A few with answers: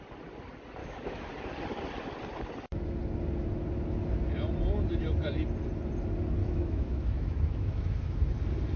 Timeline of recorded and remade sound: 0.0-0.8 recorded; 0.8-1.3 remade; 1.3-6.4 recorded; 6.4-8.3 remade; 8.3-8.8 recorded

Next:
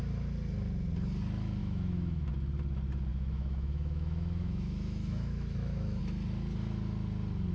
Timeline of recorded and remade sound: 0.0-1.6 recorded; 1.6-2.3 remade; 2.3-3.1 recorded; 3.1-6.0 remade; 6.0-7.5 recorded